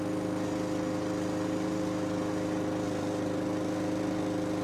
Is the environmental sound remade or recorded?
recorded